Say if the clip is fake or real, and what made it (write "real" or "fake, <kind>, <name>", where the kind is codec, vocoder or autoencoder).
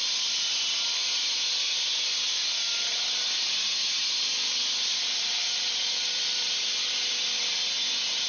real